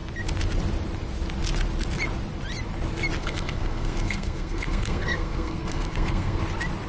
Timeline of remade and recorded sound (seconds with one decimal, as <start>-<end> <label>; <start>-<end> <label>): 0.0-3.2 recorded; 3.2-6.4 remade; 6.4-6.9 recorded